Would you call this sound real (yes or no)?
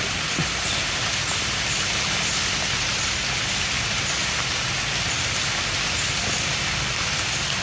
yes